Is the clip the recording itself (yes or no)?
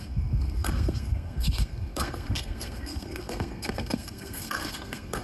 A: no